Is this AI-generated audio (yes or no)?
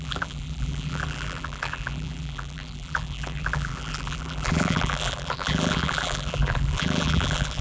yes